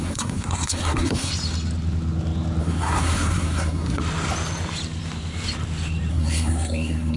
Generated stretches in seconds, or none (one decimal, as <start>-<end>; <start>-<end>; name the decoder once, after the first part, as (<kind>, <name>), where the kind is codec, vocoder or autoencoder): 0.0-1.3 (codec, SNAC); 2.6-4.0; 6.1-7.2